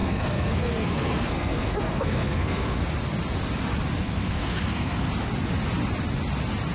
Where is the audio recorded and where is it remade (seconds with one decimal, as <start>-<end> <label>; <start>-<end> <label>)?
0.0-2.8 remade; 2.8-4.0 recorded; 4.0-5.1 remade; 5.1-6.7 recorded